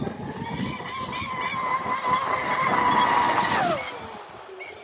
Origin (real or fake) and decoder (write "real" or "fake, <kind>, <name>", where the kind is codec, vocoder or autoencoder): real